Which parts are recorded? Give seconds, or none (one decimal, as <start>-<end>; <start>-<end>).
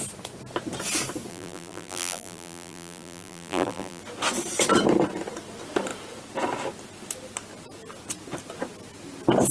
0.0-1.3; 4.0-9.5